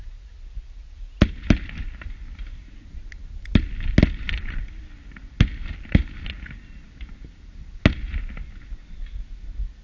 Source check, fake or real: real